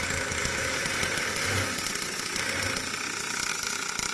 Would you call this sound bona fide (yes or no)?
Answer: yes